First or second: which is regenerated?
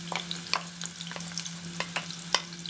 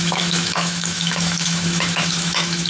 second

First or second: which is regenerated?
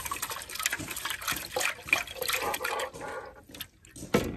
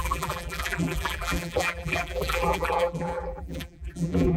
second